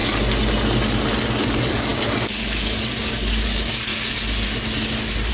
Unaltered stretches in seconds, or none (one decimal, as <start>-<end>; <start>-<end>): 0.0-1.4; 3.9-5.3